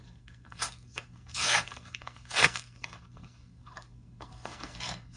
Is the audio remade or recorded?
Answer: remade